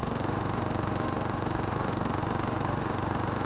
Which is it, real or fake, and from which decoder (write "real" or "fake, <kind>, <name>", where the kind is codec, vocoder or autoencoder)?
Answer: fake, autoencoder, DAC-VAE